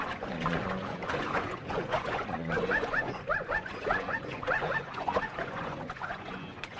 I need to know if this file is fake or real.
fake